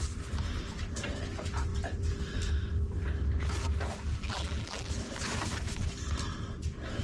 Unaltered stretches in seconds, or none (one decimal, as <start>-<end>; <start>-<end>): 0.0-4.2; 4.9-7.0